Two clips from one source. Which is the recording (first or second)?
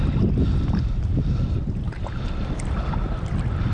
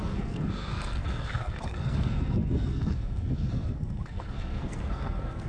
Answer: first